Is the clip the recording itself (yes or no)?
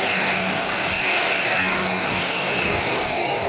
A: no